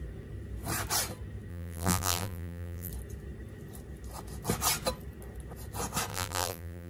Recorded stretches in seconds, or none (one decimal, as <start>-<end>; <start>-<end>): 0.0-1.5; 2.9-6.1